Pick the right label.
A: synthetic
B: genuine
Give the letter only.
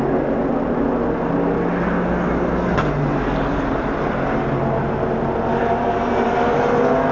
B